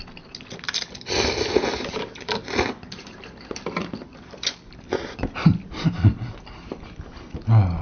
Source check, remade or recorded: recorded